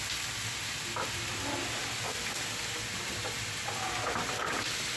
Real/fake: real